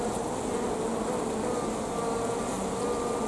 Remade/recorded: recorded